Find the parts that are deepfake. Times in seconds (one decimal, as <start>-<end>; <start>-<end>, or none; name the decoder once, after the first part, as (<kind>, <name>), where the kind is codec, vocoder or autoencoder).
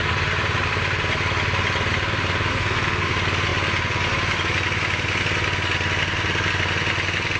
2.5-3.1 (codec, SNAC)